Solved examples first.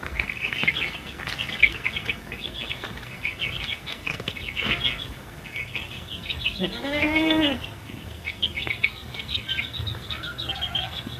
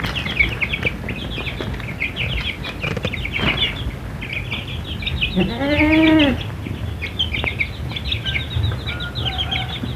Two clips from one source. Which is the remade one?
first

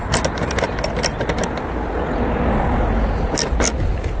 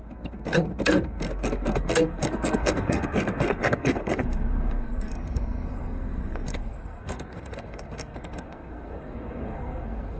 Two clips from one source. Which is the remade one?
second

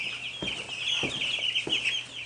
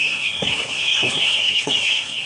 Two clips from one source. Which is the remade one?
second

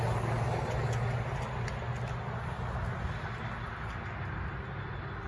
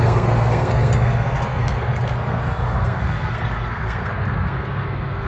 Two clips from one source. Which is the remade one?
second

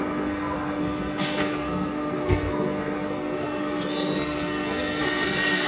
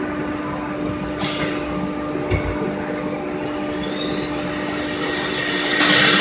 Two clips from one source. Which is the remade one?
first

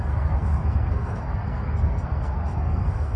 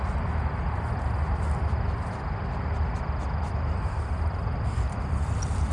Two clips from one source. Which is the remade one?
first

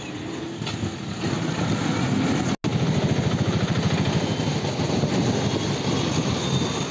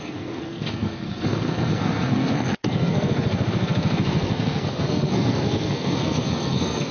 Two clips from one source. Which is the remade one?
second